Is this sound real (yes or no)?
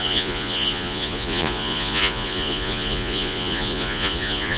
no